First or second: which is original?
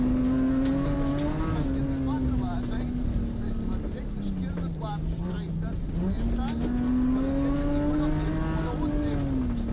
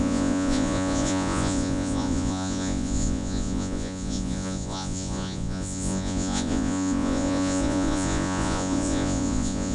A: first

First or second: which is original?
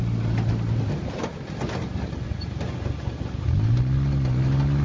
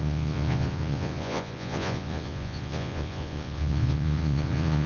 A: first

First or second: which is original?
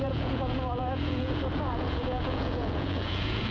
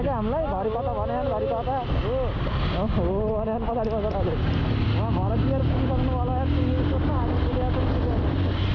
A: second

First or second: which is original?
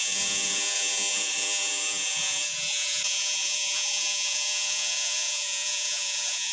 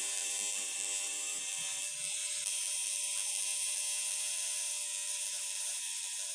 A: second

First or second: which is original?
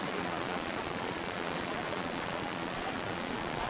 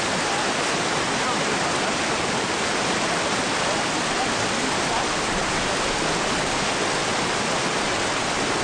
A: second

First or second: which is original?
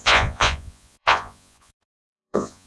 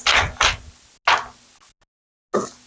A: second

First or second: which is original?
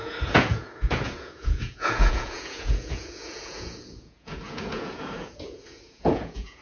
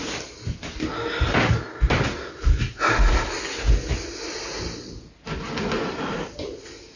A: second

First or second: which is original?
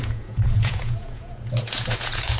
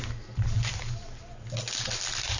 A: second